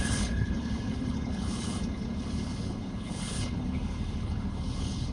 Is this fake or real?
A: fake